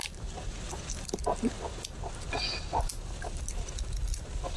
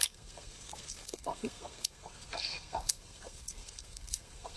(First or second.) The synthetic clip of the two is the second